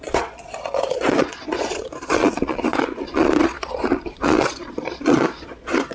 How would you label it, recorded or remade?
remade